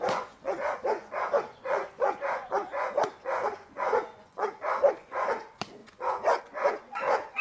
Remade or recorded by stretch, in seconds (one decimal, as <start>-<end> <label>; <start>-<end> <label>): 0.0-7.4 remade